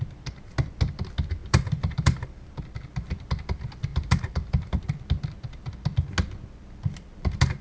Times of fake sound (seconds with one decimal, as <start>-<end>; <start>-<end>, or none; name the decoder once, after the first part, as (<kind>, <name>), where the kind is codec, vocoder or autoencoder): 1.4-2.5 (vocoder, BigVGAN v2); 3.9-4.8